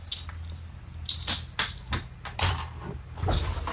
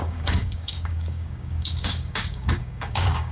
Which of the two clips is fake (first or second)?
second